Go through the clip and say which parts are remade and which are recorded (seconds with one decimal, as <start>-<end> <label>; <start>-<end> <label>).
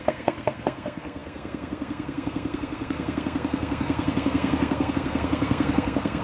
0.0-6.2 remade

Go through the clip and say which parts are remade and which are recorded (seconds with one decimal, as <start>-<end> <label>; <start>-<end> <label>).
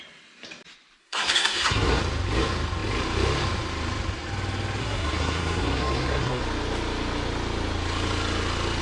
0.0-1.0 recorded; 1.0-2.0 remade; 2.0-4.8 recorded; 4.8-6.4 remade; 6.4-8.8 recorded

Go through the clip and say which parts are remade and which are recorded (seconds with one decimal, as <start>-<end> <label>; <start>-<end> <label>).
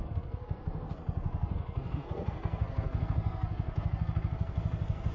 0.0-5.1 remade